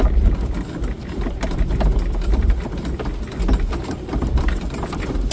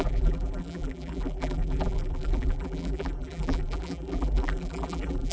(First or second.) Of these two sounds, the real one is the first